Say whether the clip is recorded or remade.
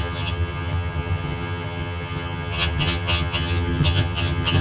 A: remade